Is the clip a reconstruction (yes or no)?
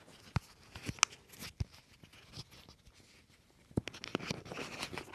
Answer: no